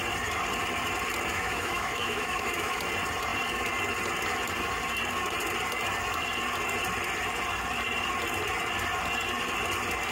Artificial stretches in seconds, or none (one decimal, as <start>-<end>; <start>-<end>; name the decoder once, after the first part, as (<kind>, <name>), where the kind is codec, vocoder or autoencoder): 1.3-2.8 (autoencoder, DAC-VAE)